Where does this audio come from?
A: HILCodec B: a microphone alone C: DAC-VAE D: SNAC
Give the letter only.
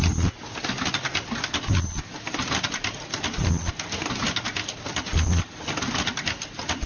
B